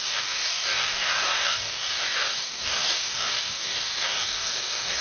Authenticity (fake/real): fake